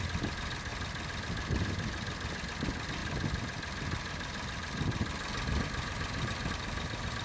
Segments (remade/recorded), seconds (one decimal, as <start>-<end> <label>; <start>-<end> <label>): 0.0-7.2 recorded